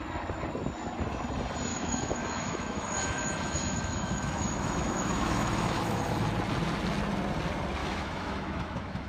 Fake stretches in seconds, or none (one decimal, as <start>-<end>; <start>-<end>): 1.7-6.0; 7.8-9.1